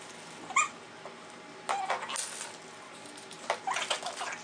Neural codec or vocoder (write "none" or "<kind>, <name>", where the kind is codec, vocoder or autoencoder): none